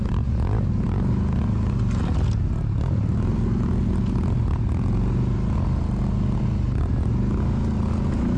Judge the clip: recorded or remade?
recorded